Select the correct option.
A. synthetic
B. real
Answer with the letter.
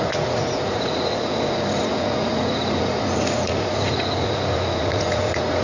A